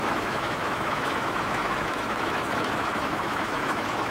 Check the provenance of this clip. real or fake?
fake